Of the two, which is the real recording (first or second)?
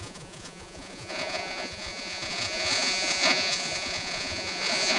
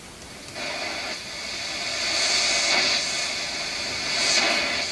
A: second